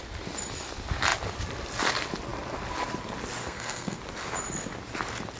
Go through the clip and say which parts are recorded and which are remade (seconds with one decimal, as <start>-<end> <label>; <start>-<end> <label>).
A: 0.0-3.4 recorded; 3.4-4.0 remade; 4.0-5.4 recorded